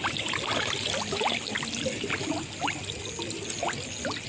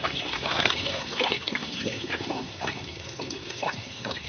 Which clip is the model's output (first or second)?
second